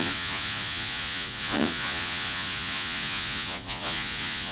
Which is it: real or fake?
fake